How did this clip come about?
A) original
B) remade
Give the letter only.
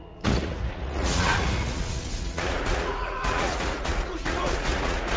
B